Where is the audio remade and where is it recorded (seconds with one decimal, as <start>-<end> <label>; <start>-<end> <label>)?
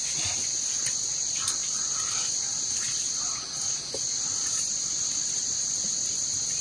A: 0.0-6.6 recorded